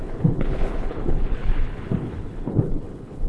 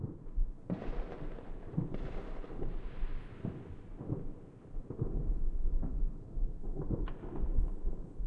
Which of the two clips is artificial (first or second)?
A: first